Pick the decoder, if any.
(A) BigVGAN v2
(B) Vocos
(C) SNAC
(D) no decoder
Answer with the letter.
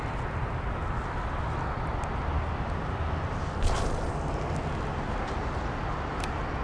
D